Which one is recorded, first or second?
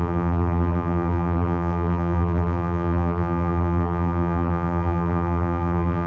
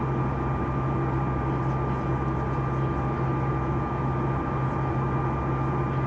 second